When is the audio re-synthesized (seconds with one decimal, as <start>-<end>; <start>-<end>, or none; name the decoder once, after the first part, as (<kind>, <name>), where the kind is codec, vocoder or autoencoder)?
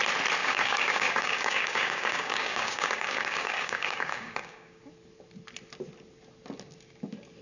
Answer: 0.4-4.8 (codec, DAC)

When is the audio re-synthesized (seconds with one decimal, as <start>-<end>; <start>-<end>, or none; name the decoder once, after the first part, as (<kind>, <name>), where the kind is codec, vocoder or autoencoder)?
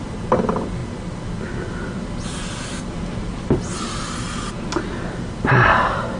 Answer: none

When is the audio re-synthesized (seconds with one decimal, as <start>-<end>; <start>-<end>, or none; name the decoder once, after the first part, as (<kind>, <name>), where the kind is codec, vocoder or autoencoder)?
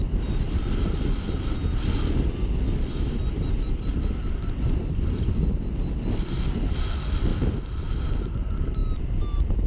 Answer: none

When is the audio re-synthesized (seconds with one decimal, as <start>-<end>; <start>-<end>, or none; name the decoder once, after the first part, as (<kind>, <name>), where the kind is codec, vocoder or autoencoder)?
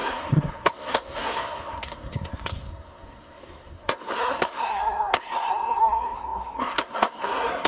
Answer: 0.0-7.7 (codec, SNAC)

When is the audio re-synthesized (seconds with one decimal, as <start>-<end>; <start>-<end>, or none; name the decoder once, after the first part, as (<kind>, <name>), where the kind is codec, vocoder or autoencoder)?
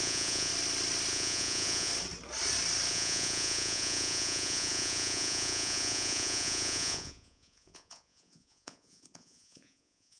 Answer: 0.0-0.5 (vocoder, Vocos); 1.1-1.9; 2.9-10.2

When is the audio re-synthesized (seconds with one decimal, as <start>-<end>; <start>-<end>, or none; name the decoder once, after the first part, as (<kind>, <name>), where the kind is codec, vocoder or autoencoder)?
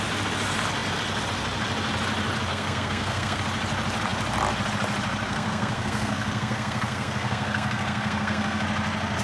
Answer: 2.5-3.4 (codec, SNAC); 5.3-8.6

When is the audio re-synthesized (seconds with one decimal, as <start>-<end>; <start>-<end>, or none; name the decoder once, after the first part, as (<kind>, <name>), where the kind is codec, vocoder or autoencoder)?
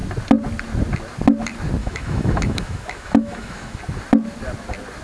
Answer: 1.8-3.8 (autoencoder, DAC-VAE)